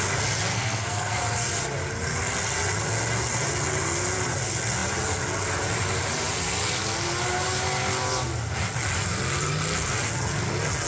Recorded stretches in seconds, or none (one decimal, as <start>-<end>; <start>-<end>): 0.0-0.5; 1.2-10.9